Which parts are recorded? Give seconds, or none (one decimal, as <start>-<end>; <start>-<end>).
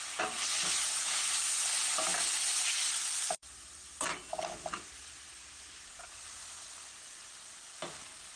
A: 0.0-8.4